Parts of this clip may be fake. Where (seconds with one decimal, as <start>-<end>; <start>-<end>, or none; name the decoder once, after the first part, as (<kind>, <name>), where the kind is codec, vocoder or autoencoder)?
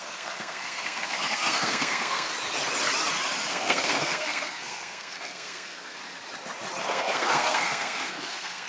0.0-2.3 (codec, SNAC); 3.5-6.0; 6.8-8.7